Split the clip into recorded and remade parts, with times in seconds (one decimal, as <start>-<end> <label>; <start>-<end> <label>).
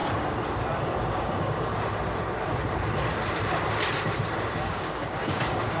0.0-1.1 recorded; 1.1-1.7 remade; 1.7-4.6 recorded; 4.6-5.8 remade